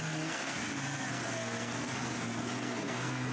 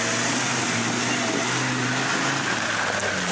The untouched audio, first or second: second